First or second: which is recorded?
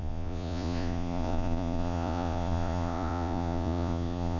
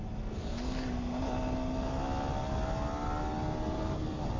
second